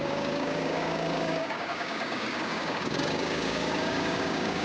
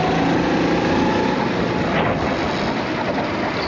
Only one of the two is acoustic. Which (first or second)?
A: second